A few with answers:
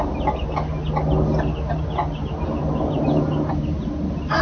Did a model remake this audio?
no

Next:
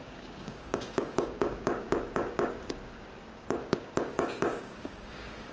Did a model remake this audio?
yes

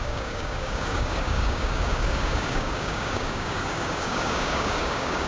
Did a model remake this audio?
yes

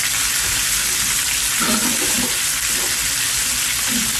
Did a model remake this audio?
no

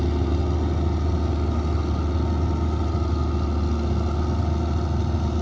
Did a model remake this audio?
no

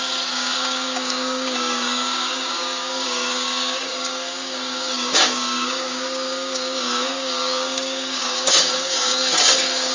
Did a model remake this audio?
yes